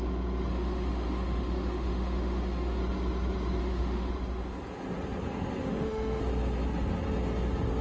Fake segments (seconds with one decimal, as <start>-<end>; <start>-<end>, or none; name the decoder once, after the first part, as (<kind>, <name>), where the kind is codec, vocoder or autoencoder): 0.5-2.8 (autoencoder, DAC-VAE); 3.6-4.1; 5.6-6.2